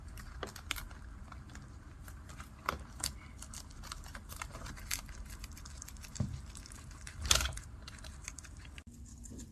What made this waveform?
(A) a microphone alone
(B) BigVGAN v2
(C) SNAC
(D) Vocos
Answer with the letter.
B